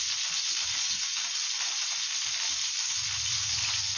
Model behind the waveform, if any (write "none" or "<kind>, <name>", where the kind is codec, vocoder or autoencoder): none